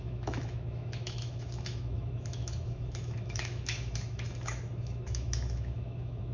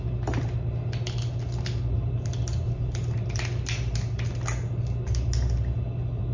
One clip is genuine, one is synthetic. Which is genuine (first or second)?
second